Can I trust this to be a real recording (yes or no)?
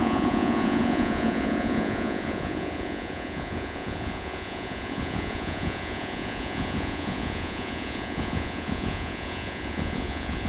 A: no